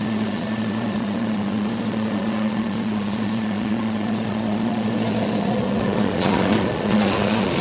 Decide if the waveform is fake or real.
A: fake